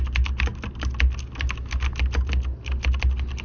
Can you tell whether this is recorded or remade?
recorded